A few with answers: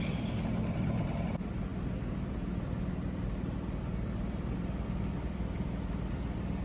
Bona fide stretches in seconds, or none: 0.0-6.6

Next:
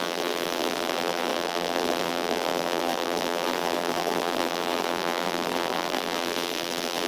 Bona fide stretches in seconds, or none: none